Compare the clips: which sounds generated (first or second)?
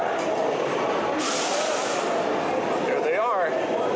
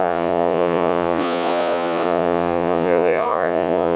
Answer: second